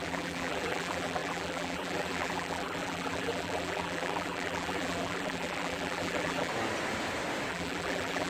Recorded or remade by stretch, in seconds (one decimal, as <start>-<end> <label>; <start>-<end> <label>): 0.0-6.5 remade; 6.5-7.5 recorded; 7.5-8.3 remade

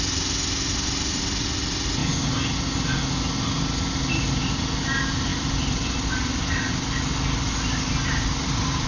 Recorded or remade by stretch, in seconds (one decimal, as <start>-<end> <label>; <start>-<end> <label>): 0.0-5.3 recorded; 5.3-7.0 remade; 7.0-8.9 recorded

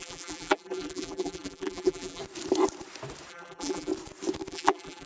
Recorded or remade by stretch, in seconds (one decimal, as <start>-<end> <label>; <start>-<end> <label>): 0.0-2.2 remade; 2.2-3.3 recorded; 3.3-3.9 remade; 3.9-4.5 recorded; 4.5-5.1 remade

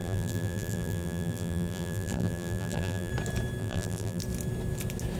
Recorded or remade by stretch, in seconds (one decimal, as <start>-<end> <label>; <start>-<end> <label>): 0.0-3.1 remade; 3.1-3.6 recorded; 3.6-4.2 remade; 4.2-5.2 recorded

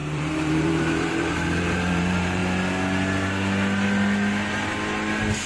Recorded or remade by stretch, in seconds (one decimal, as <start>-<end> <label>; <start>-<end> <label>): 0.0-2.4 remade; 2.4-5.5 recorded

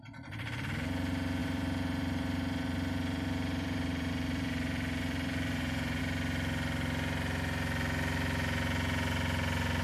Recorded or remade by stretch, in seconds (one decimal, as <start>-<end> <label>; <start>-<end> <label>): 0.0-1.4 recorded; 1.4-6.0 remade; 6.0-9.8 recorded

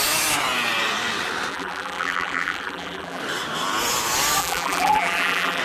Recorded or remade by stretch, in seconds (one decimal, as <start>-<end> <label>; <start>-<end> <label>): 0.0-1.5 recorded; 1.5-3.2 remade; 3.2-4.4 recorded; 4.4-5.6 remade

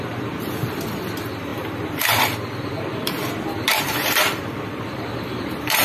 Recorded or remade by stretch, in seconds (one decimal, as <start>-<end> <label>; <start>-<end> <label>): 0.0-5.8 remade